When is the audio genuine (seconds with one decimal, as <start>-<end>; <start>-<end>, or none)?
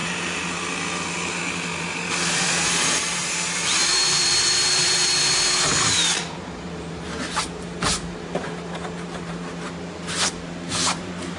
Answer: 0.0-2.1